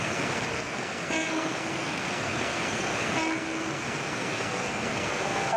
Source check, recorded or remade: remade